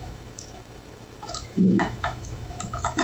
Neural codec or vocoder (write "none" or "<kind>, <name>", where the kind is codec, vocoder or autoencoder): autoencoder, DAC-VAE